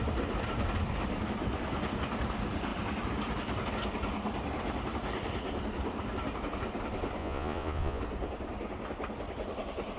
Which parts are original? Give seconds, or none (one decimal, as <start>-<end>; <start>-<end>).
0.0-7.2; 8.0-10.0